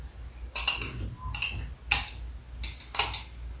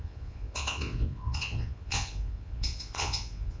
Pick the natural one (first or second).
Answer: first